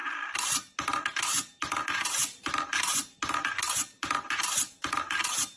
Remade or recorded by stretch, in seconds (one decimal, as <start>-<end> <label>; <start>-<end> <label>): 0.0-5.6 recorded